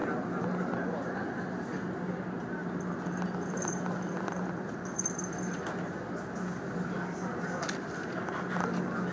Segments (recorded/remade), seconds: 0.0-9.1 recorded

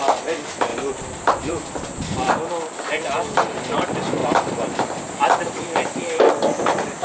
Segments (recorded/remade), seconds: 0.0-0.7 recorded; 0.7-2.3 remade; 2.3-4.2 recorded; 4.2-6.3 remade; 6.3-7.0 recorded